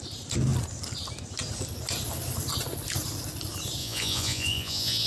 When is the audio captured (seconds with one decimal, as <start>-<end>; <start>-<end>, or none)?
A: 0.0-3.8